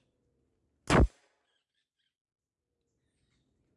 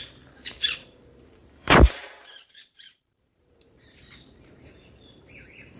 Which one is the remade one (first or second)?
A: second